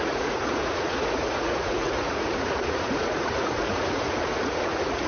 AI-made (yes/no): yes